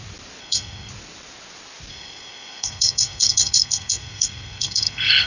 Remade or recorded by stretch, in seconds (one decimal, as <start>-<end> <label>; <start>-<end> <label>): 0.0-0.4 recorded; 0.4-0.9 remade; 0.9-1.9 recorded; 1.9-5.3 remade